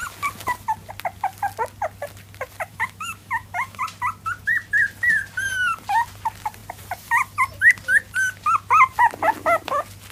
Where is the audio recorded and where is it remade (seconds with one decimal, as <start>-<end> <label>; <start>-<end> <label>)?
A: 0.0-2.7 recorded; 2.7-3.8 remade; 3.8-10.1 recorded